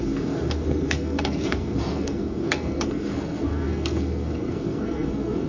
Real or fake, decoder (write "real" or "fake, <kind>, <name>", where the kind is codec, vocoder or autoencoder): fake, codec, SNAC